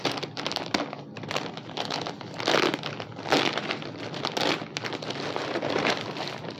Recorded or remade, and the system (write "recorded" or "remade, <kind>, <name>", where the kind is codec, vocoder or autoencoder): recorded